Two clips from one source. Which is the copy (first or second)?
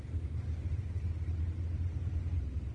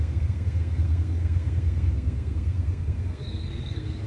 second